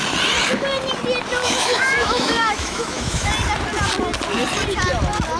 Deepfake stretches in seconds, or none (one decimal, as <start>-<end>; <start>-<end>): 1.4-3.3